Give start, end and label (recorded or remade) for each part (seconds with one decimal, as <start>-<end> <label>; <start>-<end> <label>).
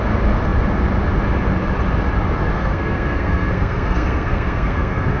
0.0-2.5 recorded; 2.5-5.2 remade